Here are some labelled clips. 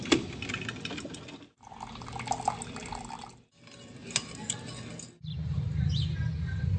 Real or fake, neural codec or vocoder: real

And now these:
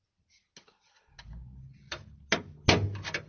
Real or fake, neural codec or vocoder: real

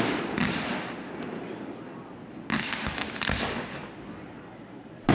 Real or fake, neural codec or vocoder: real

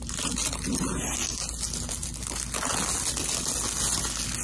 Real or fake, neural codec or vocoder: real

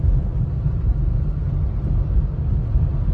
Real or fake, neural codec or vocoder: real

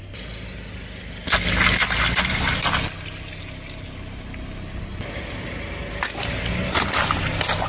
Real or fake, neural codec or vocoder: real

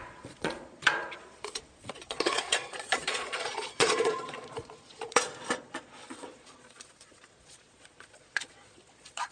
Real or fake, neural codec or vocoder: fake, vocoder, Vocos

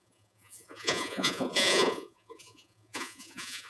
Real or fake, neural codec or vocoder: fake, vocoder, Vocos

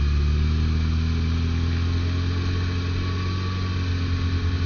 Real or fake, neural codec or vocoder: real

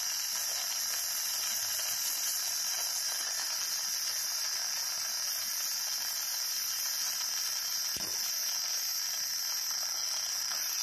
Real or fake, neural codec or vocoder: real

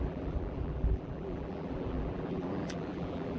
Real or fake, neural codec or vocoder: fake, vocoder, BigVGAN v2